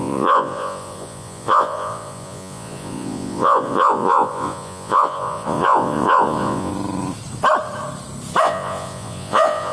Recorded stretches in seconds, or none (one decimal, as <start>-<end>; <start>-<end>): 6.7-8.4